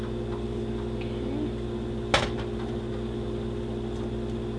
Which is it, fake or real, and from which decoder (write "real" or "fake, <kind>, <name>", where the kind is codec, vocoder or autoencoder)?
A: real